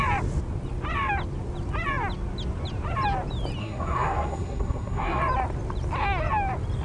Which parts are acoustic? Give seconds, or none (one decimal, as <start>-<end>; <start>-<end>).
0.0-3.6; 5.2-6.8